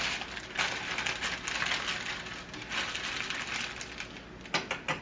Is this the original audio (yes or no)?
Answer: yes